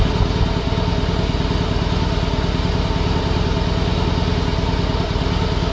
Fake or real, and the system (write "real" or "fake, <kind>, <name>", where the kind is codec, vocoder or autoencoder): real